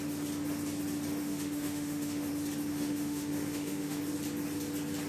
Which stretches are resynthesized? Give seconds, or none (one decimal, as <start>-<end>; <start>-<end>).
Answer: 1.2-2.3; 2.7-4.0